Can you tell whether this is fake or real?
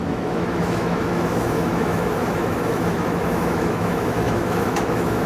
fake